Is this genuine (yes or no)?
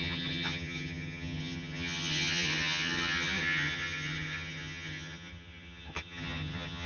no